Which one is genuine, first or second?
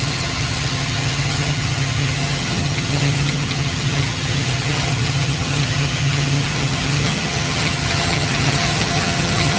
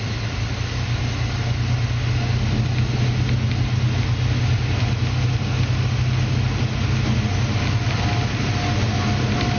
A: second